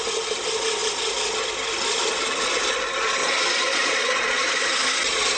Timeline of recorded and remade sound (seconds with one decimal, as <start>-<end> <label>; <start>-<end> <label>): 0.0-3.2 recorded; 3.2-4.5 remade; 4.5-5.4 recorded